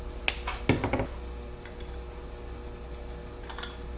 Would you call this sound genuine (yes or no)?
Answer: yes